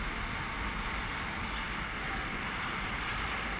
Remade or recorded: recorded